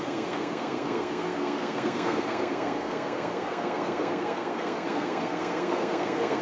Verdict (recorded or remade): remade